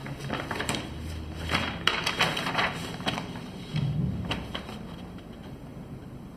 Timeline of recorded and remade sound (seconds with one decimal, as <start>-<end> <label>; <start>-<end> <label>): 0.0-0.8 recorded; 0.8-6.4 remade